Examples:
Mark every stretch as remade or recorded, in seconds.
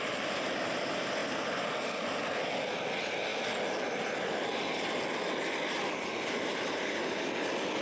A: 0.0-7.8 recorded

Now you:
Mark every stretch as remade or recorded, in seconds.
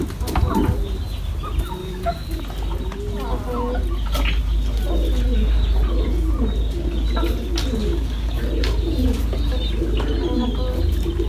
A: 0.0-1.8 recorded; 1.8-2.4 remade; 2.4-7.8 recorded; 7.8-8.4 remade; 8.4-11.3 recorded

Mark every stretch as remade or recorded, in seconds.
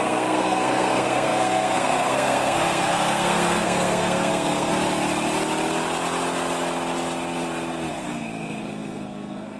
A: 0.0-4.7 remade; 4.7-7.9 recorded; 7.9-9.6 remade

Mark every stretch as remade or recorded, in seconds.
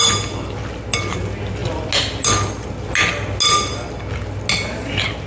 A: 0.0-5.3 recorded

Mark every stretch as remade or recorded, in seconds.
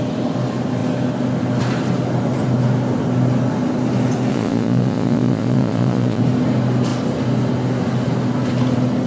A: 0.0-4.3 recorded; 4.3-6.2 remade; 6.2-9.1 recorded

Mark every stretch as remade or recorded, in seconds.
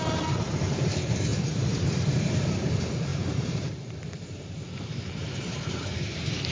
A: 0.0-6.5 remade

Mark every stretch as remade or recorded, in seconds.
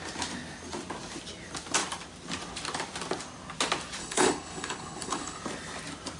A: 0.0-4.0 recorded; 4.0-5.4 remade; 5.4-6.2 recorded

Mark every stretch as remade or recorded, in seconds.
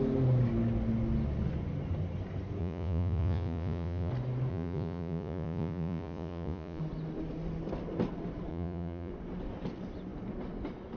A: 0.0-2.6 recorded; 2.6-4.1 remade; 4.1-4.5 recorded; 4.5-6.8 remade; 6.8-8.5 recorded; 8.5-9.1 remade; 9.1-11.0 recorded